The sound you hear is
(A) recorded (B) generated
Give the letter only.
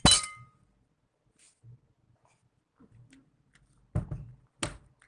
A